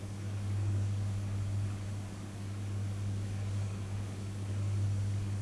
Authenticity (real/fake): fake